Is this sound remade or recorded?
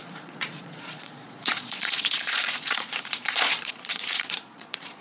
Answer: remade